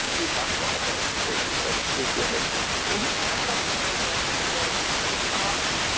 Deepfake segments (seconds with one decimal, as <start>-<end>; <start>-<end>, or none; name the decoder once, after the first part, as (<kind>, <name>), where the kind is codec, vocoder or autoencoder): 0.0-0.5 (codec, DAC); 3.2-3.7